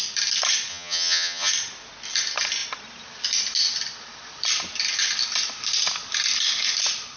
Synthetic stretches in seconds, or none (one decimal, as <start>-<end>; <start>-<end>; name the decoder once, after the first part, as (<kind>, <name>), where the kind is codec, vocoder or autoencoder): 0.7-1.5 (vocoder, HiFi-GAN)